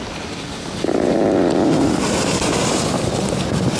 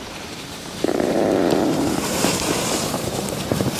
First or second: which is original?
first